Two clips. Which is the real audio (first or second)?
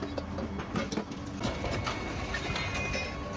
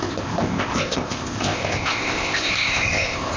first